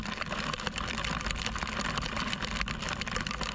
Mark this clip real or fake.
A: fake